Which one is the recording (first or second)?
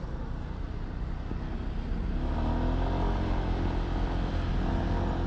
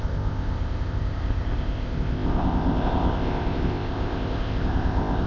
first